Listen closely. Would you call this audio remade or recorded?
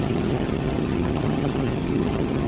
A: remade